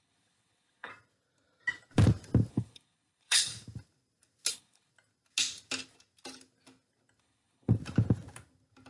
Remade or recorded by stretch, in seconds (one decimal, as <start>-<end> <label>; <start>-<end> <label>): 0.0-0.9 remade; 0.9-2.5 recorded; 2.5-3.5 remade; 3.5-4.5 recorded; 4.5-4.9 remade; 4.9-7.2 recorded; 7.2-7.7 remade; 7.7-8.9 recorded